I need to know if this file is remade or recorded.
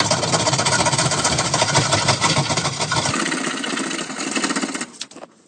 recorded